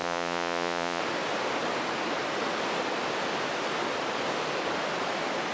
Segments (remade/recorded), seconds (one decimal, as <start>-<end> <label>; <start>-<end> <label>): 0.0-1.0 remade; 1.0-5.5 recorded